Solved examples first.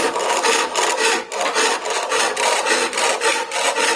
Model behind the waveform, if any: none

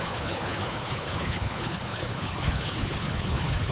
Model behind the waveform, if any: codec, HILCodec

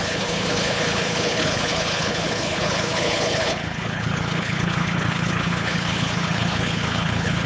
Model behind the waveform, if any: codec, HILCodec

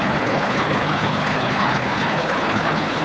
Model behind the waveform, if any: codec, HILCodec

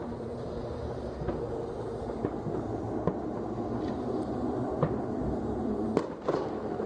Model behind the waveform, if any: none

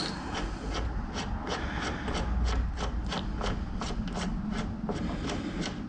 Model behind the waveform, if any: none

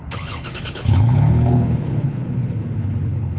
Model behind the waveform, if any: codec, HILCodec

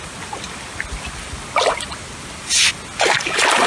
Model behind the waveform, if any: none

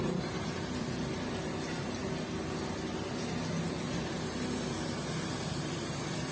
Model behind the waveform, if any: none